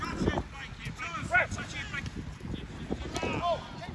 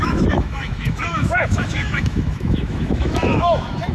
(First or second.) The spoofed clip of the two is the second